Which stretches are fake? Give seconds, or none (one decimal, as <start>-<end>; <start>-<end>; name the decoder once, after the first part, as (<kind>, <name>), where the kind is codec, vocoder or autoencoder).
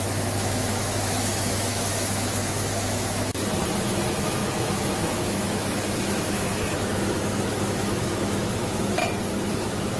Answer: 0.0-3.3 (autoencoder, DAC-VAE); 3.8-9.0; 9.5-10.0